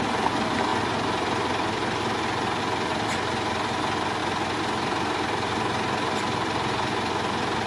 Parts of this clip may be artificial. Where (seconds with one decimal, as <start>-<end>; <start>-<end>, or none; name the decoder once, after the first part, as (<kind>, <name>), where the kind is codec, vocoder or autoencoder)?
none